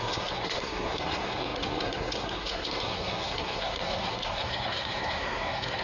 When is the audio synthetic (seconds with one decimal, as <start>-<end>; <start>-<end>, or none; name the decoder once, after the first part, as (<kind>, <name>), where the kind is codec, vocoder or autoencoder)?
0.0-5.8 (codec, SNAC)